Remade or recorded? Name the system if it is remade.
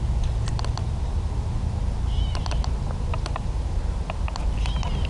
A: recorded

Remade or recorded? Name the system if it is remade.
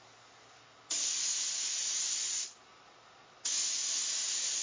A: recorded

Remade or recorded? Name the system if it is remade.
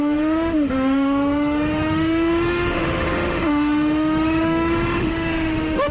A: remade, autoencoder, DAC-VAE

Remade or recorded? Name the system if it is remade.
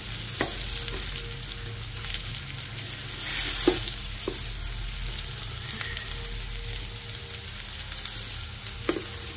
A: recorded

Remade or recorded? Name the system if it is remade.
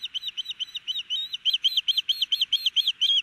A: recorded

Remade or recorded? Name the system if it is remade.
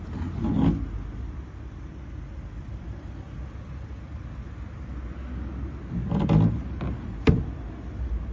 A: recorded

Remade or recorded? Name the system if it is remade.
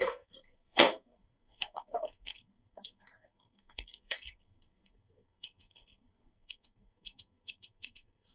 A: remade, codec, SNAC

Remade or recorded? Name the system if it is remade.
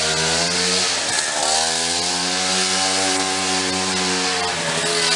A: recorded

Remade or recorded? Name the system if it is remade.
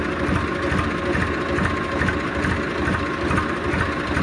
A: recorded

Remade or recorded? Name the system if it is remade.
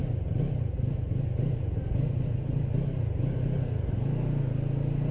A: recorded